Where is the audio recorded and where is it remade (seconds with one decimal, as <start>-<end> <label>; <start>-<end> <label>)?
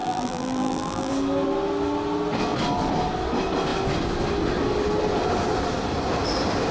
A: 0.0-1.1 remade; 1.1-6.7 recorded